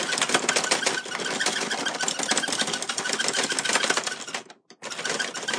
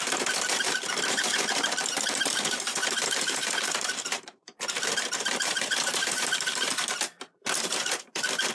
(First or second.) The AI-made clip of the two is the second